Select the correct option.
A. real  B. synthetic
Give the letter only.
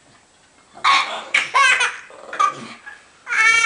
A